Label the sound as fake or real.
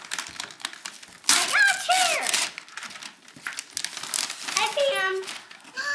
real